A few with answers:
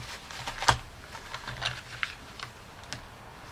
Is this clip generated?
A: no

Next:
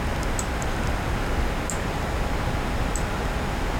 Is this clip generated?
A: no